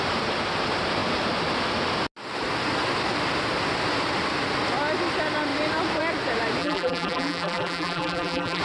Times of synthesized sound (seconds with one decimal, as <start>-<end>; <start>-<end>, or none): 6.6-8.6